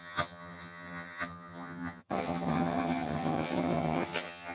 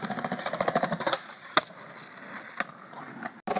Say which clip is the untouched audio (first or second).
second